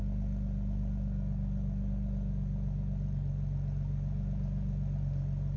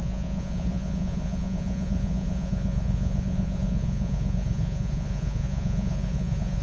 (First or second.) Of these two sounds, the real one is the first